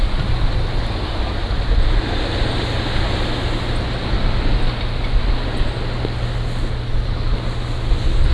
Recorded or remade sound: recorded